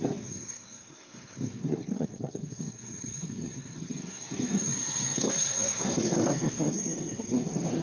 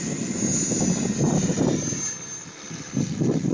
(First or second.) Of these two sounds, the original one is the second